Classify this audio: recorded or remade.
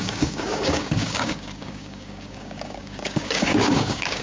remade